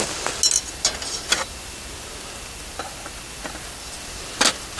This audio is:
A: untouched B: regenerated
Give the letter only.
A